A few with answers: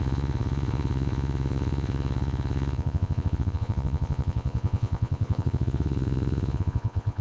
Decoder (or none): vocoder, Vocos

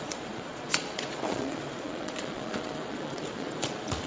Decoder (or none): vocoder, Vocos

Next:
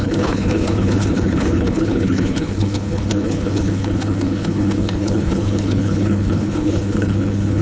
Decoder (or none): codec, HILCodec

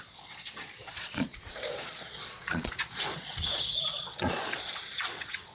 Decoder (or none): vocoder, Vocos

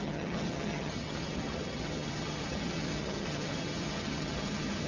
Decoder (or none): vocoder, HiFi-GAN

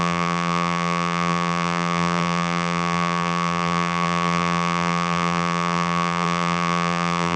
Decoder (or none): vocoder, BigVGAN v2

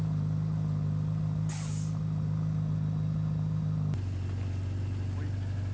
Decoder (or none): none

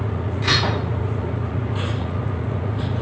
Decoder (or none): vocoder, Vocos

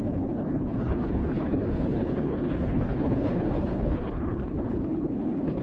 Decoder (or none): codec, HILCodec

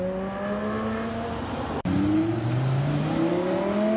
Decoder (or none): none